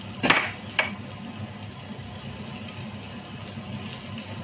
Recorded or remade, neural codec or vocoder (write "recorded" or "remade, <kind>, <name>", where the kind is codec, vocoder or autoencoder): recorded